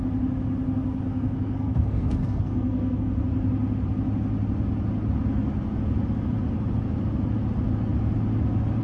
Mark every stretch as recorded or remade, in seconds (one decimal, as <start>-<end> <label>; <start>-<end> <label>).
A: 0.0-1.1 recorded; 1.1-3.1 remade; 3.1-8.8 recorded